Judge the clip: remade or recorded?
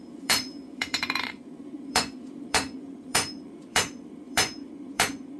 remade